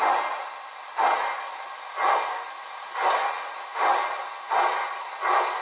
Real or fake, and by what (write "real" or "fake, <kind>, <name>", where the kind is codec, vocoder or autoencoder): real